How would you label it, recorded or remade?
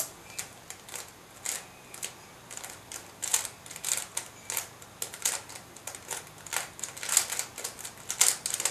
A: recorded